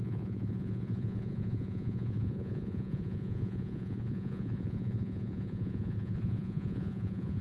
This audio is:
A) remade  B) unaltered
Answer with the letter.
A